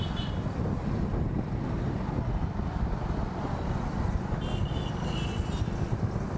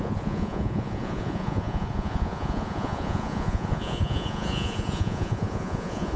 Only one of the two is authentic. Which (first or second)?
first